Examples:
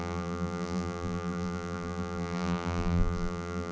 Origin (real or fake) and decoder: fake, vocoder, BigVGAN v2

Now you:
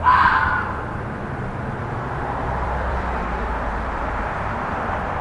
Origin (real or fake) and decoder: fake, vocoder, BigVGAN v2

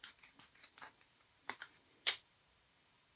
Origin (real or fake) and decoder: fake, vocoder, BigVGAN v2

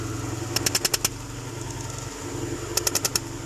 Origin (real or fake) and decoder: real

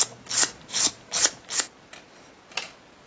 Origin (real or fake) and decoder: real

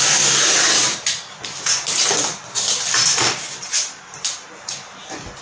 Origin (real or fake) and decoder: real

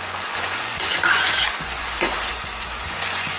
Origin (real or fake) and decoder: fake, vocoder, Vocos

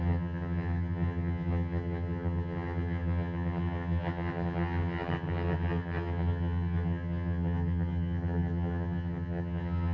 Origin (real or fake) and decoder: fake, vocoder, HiFi-GAN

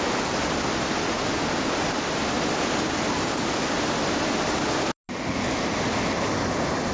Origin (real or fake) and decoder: real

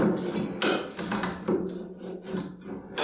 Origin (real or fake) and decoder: real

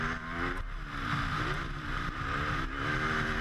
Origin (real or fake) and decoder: real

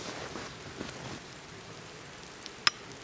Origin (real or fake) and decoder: real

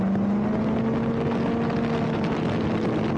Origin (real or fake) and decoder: real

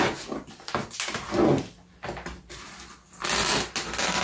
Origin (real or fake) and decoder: real